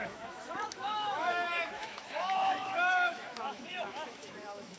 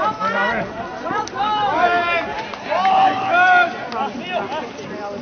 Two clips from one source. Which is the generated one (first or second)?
first